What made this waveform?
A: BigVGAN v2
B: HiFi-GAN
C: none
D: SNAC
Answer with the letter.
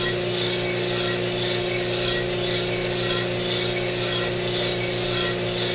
C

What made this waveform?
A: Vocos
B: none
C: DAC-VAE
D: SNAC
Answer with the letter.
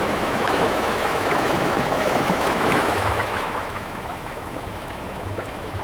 C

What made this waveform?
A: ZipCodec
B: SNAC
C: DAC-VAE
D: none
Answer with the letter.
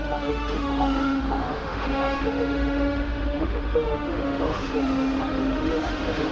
C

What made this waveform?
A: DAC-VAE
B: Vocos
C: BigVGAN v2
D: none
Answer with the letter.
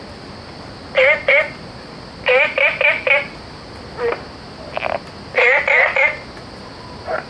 D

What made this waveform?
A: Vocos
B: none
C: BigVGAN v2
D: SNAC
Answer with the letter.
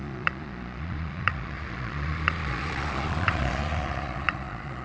A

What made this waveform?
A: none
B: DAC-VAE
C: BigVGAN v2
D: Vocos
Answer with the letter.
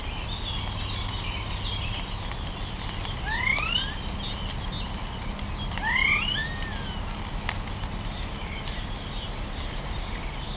A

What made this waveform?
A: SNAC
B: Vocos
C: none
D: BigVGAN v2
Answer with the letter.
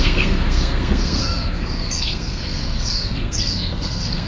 A